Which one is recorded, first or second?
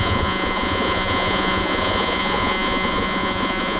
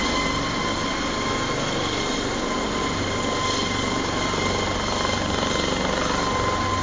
second